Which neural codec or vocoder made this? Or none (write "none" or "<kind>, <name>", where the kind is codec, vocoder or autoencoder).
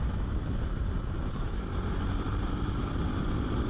vocoder, BigVGAN v2